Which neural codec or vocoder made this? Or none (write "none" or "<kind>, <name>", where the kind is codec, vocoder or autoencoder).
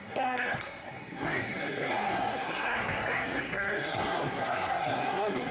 codec, SNAC